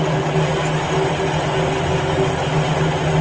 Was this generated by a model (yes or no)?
no